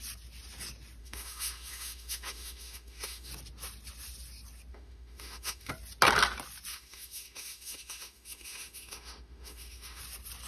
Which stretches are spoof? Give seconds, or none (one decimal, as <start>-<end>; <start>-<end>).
1.0-3.3; 4.7-5.7; 6.7-10.0